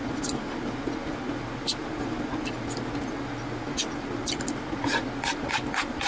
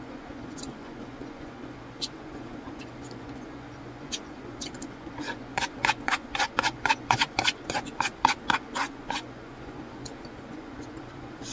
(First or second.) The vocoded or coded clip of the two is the second